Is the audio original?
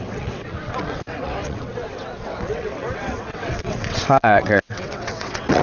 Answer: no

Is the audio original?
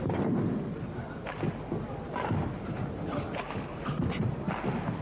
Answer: yes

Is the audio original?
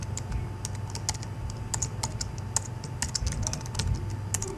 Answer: yes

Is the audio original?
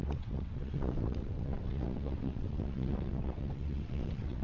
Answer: no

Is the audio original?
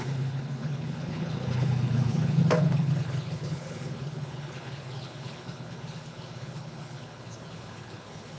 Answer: no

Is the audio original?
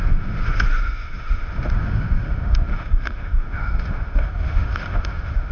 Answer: no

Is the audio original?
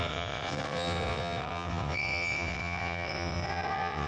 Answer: no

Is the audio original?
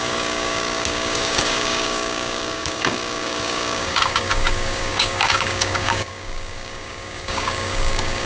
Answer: no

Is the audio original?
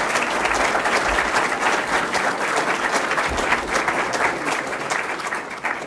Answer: yes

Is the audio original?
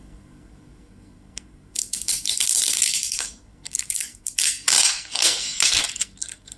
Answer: no